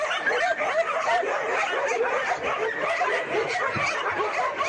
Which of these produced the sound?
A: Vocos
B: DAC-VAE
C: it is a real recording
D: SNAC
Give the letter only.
C